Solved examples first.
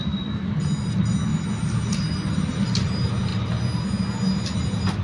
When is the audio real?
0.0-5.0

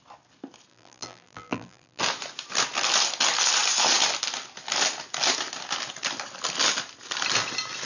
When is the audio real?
0.0-0.7; 2.0-7.9

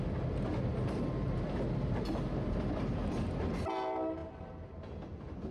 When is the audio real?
0.0-0.7; 2.9-5.5

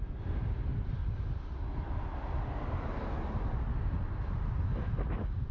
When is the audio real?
1.0-4.3

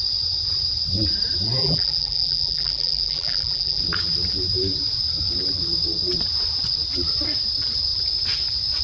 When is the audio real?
0.0-1.6; 3.8-8.8

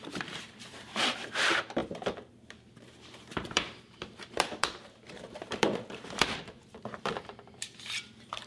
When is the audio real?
none